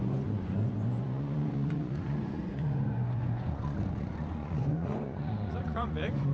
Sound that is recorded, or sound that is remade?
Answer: remade